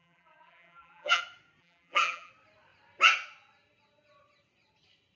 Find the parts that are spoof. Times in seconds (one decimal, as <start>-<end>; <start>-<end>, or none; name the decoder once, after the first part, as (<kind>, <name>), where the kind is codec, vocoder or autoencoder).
0.0-1.2 (vocoder, BigVGAN v2); 1.6-2.3